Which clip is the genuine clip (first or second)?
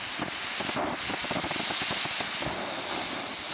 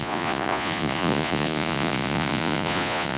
first